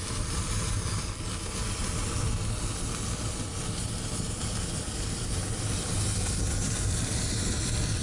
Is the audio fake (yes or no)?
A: no